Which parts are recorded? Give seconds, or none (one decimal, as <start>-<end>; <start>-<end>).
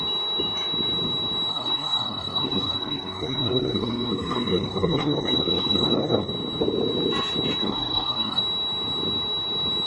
0.0-1.5; 6.3-7.6; 8.4-9.9